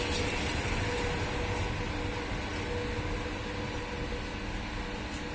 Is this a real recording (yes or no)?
yes